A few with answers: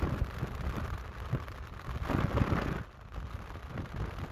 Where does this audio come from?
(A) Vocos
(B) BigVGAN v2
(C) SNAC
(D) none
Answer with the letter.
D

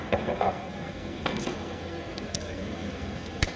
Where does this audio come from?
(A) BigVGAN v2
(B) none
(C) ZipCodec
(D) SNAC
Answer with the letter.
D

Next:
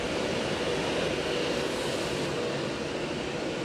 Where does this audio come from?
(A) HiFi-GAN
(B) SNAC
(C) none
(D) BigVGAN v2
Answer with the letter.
C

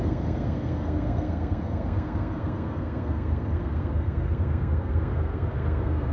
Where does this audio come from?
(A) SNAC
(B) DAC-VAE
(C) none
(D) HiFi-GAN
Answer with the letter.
A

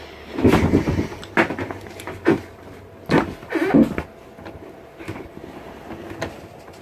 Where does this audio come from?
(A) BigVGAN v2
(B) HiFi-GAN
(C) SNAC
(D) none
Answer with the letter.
D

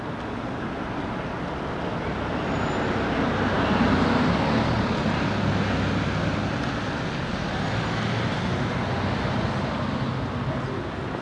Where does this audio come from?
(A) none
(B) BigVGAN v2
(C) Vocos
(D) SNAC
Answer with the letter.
A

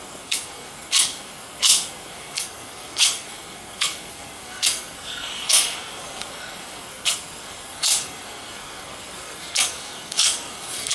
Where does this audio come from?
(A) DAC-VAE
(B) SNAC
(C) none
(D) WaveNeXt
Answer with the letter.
B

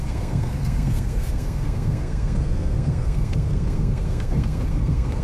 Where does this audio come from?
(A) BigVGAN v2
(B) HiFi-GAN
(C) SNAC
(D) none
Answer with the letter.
C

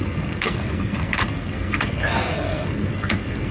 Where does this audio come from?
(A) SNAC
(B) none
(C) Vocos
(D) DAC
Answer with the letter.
A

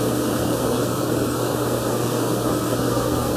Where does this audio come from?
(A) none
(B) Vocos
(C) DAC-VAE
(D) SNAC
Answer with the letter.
D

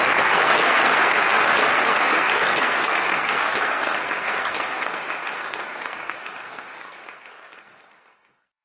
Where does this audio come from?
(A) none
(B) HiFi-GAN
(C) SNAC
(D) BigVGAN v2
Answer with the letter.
C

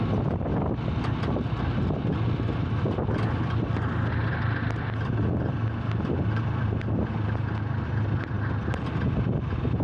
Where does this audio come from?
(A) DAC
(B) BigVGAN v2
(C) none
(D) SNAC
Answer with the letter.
C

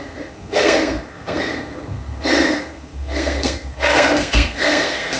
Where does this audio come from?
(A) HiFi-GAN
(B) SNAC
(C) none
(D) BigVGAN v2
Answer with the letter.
B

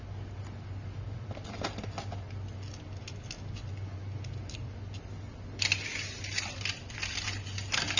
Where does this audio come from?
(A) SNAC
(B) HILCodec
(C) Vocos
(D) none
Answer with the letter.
D